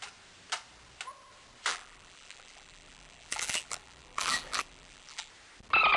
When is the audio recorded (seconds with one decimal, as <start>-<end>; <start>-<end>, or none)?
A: 0.0-1.7; 5.3-6.0